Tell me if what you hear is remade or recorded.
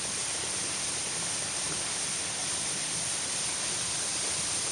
recorded